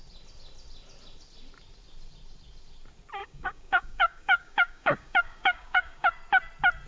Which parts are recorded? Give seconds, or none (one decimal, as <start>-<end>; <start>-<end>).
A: 0.0-3.2; 6.1-6.9